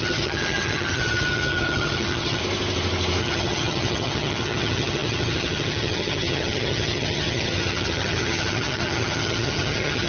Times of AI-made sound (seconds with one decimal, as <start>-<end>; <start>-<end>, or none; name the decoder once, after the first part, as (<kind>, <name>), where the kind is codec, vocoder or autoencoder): 0.0-2.4 (vocoder, HiFi-GAN); 3.2-10.1